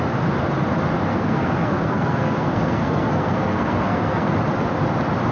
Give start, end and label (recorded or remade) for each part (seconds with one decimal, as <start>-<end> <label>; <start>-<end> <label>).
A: 0.0-1.1 recorded; 1.1-4.3 remade; 4.3-5.3 recorded